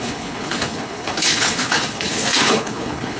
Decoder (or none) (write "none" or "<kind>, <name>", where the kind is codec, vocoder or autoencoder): codec, HILCodec